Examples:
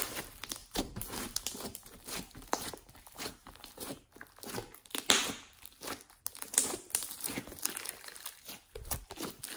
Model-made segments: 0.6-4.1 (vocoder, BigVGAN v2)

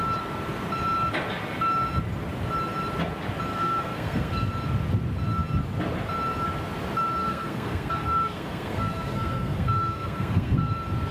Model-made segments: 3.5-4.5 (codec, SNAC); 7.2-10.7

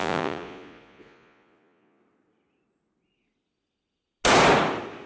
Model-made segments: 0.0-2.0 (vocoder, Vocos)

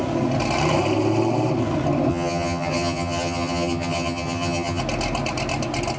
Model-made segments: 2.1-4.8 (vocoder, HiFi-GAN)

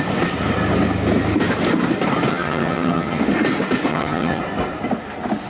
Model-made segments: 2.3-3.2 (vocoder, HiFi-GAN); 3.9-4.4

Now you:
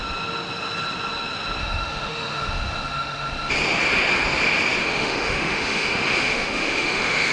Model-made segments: 1.6-3.5 (autoencoder, DAC-VAE); 4.8-7.3

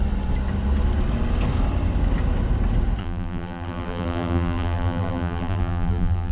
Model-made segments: 3.0-6.3 (vocoder, BigVGAN v2)

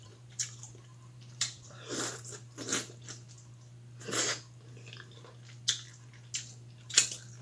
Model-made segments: 0.0-2.7 (vocoder, BigVGAN v2)